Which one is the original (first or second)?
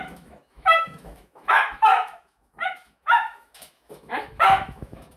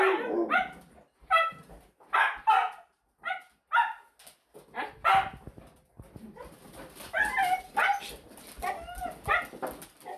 second